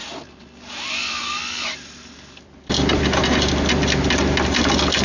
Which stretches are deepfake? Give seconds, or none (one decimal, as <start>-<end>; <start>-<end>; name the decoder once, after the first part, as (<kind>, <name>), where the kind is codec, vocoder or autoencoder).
0.0-3.0 (vocoder, BigVGAN v2)